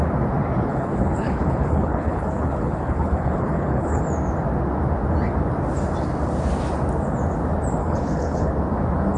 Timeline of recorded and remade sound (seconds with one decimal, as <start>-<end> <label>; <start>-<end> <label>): 0.0-0.7 recorded; 0.7-4.0 remade; 4.0-7.8 recorded; 7.8-8.5 remade; 8.5-9.2 recorded